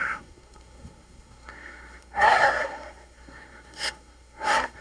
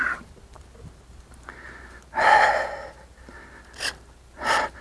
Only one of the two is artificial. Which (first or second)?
first